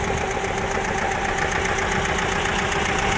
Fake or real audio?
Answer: real